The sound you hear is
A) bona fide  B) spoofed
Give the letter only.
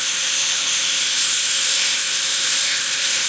B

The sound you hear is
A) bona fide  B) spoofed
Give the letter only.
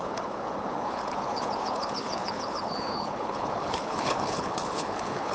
B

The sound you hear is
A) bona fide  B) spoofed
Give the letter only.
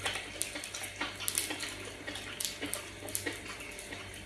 A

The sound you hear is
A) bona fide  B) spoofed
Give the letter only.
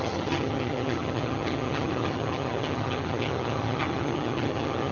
B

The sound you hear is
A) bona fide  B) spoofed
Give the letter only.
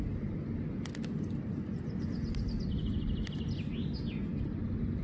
A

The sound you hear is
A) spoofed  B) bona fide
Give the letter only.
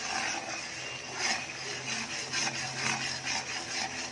B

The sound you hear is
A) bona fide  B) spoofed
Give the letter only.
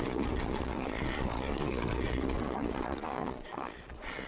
B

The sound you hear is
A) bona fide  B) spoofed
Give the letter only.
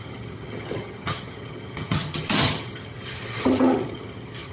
B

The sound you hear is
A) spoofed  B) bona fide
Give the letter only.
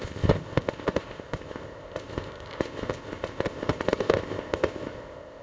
A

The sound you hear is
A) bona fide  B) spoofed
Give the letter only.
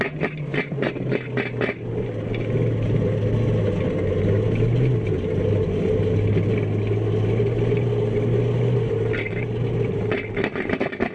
A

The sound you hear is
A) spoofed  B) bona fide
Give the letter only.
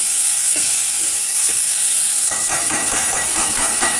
A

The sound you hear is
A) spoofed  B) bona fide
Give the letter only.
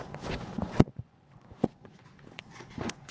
A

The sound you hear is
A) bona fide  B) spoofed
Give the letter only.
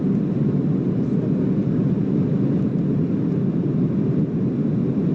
A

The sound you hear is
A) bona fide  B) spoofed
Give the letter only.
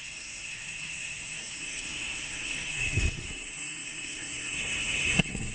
B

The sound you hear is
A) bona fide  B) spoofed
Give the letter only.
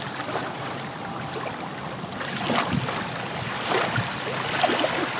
A